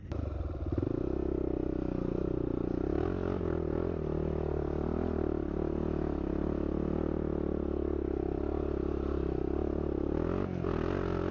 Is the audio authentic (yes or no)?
yes